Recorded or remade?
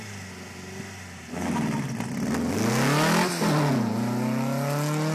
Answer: recorded